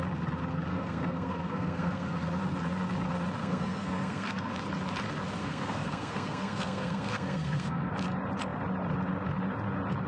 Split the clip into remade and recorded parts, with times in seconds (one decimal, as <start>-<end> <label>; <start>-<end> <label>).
0.0-0.7 recorded; 0.7-2.3 remade; 2.3-3.4 recorded; 3.4-4.5 remade; 4.5-5.4 recorded; 5.4-7.9 remade; 7.9-10.1 recorded